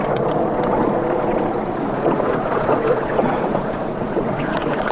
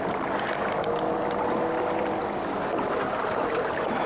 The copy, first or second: first